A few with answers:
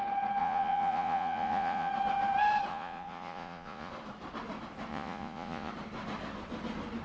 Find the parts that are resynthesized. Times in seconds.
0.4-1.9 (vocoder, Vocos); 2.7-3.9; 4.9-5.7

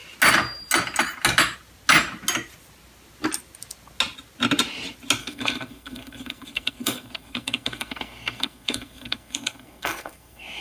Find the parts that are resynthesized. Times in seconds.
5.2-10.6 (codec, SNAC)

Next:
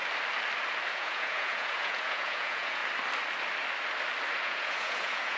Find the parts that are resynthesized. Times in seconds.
0.9-2.8 (vocoder, Vocos); 4.4-5.4

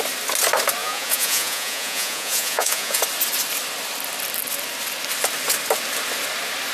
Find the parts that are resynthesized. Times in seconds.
0.8-3.0 (vocoder, Vocos)